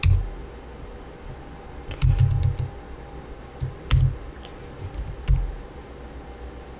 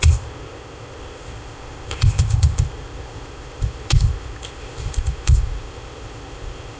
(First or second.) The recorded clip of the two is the first